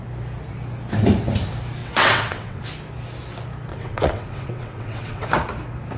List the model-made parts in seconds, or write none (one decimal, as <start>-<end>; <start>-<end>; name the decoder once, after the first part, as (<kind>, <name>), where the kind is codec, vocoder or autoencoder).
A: 1.8-2.6 (vocoder, WaveNeXt); 3.7-5.3